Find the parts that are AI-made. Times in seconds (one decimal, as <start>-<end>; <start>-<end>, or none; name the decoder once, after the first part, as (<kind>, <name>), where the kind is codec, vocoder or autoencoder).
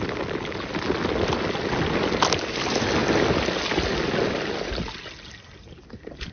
none